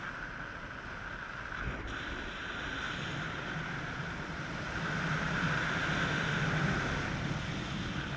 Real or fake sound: real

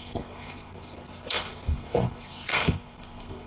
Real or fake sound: fake